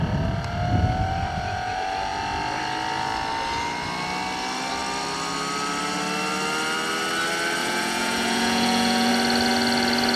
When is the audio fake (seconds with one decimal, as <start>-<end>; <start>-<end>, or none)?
7.6-9.1